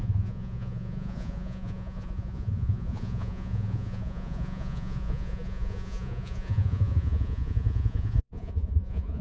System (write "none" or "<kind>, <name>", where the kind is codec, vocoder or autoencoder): vocoder, Vocos